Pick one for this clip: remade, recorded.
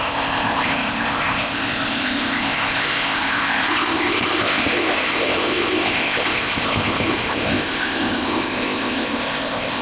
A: remade